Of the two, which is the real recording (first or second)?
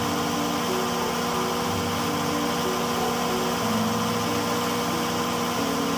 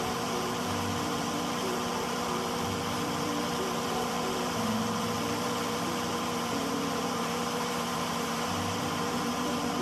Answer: first